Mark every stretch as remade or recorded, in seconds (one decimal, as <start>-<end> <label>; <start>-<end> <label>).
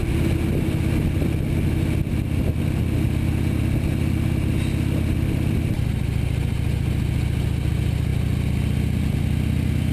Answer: 0.0-9.9 recorded